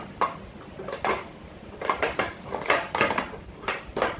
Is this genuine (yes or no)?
yes